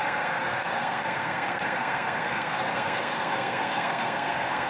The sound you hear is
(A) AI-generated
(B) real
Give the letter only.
A